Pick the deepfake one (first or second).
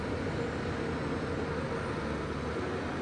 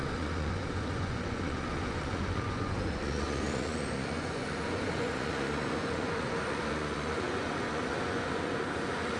second